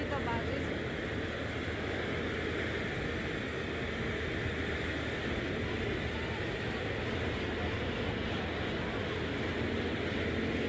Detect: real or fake real